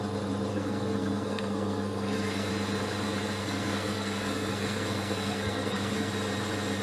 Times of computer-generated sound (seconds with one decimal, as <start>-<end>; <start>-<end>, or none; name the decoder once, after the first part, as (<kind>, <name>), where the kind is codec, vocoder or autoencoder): 0.5-2.5 (codec, SNAC); 3.4-6.1